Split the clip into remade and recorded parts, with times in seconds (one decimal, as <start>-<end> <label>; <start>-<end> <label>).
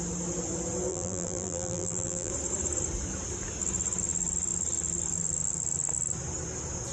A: 0.0-0.9 recorded; 0.9-2.3 remade; 2.3-6.9 recorded